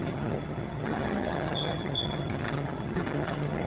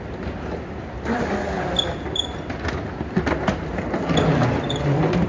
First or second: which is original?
second